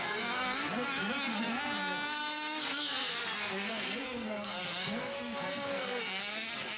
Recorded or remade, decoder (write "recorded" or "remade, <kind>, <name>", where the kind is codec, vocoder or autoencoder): remade, codec, SNAC